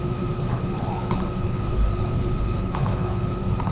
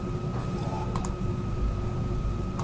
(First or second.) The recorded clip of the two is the second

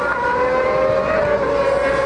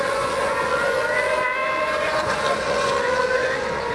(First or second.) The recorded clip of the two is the first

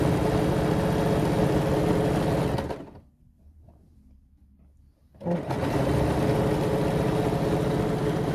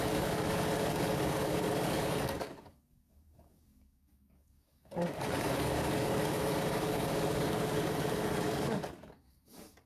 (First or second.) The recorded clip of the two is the first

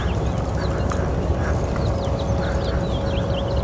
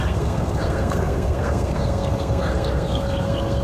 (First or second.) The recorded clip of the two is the first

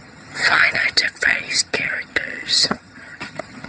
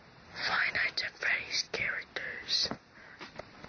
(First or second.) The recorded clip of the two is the second